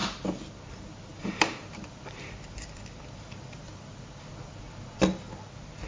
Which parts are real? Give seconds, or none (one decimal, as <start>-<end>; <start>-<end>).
0.0-1.1; 4.6-5.9